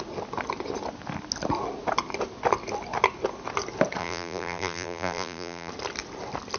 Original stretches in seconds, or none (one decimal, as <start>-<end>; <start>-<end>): 0.0-4.0; 5.7-6.6